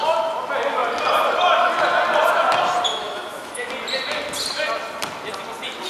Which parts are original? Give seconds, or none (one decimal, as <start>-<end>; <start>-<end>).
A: 0.0-2.9; 3.7-5.9